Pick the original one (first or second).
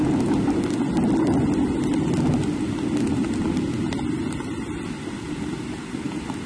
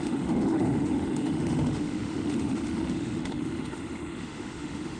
first